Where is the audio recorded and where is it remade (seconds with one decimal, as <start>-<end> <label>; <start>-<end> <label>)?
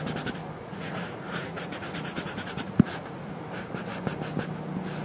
0.0-0.4 recorded; 0.4-3.4 remade; 3.4-5.0 recorded